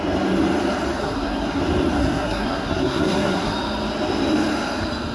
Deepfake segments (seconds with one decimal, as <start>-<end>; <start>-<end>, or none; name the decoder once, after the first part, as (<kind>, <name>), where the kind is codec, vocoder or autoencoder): 1.0-1.6 (codec, SNAC); 2.0-3.5